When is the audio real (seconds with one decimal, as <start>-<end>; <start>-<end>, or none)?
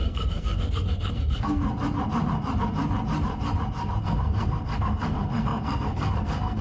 1.6-4.0